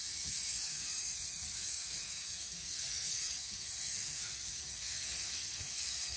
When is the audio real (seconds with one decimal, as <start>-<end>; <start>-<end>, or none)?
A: none

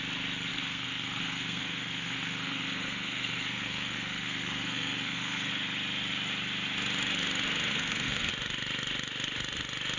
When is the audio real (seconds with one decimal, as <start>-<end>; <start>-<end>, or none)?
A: 0.0-0.5; 5.5-7.7; 8.3-10.0

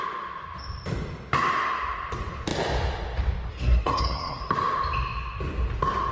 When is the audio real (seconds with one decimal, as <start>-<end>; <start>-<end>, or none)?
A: 0.0-3.5; 4.4-6.1

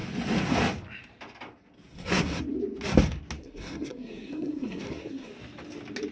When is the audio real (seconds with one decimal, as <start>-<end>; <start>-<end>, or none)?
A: 0.0-1.9; 2.4-3.4; 5.3-6.1

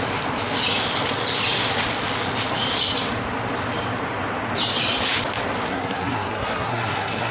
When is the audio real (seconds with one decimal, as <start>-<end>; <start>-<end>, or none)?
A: 0.0-5.7

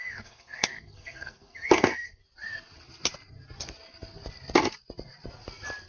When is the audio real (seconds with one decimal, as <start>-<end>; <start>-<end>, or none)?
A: 2.2-5.9

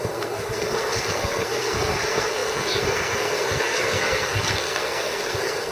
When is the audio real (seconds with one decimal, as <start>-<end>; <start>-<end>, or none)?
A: none